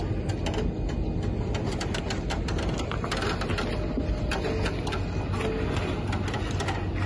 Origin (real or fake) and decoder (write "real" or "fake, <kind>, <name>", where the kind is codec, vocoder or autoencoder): real